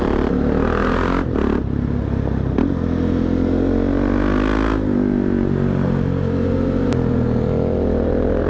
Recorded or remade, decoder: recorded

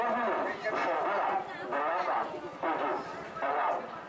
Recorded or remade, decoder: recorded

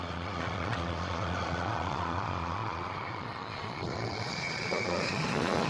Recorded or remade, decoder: remade, vocoder, Vocos